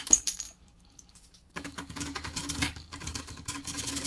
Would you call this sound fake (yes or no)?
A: yes